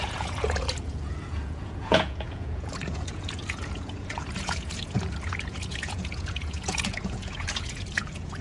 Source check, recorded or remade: remade